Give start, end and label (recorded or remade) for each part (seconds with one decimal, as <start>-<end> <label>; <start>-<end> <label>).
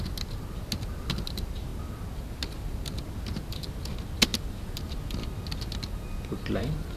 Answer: 0.0-7.0 recorded